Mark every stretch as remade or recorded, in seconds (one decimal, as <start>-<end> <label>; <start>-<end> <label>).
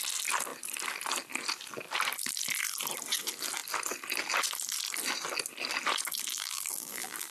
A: 0.0-6.3 recorded; 6.3-7.3 remade